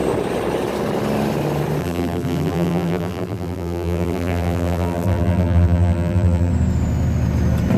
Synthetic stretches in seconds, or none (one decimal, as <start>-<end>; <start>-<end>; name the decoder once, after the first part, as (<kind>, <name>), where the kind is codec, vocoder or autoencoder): 1.8-6.5 (vocoder, BigVGAN v2)